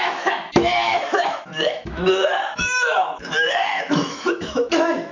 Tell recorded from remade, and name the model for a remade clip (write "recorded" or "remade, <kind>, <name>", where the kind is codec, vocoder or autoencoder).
remade, autoencoder, DAC-VAE